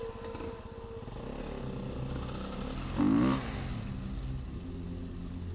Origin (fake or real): real